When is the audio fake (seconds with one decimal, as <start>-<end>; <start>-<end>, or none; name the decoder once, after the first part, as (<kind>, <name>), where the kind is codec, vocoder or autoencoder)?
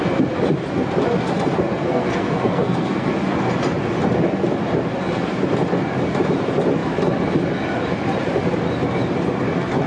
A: 1.6-3.1 (codec, SNAC)